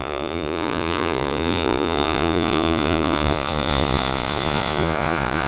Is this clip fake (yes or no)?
yes